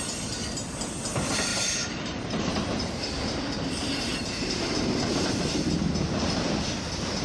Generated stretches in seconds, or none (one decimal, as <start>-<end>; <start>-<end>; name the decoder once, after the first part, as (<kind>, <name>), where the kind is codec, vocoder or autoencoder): 1.5-5.6 (vocoder, BigVGAN v2)